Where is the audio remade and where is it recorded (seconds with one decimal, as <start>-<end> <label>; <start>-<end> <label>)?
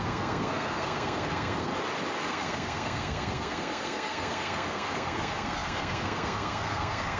0.0-1.7 remade; 1.7-2.3 recorded; 2.3-7.2 remade